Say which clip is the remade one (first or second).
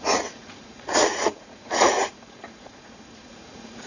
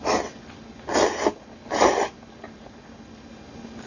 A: first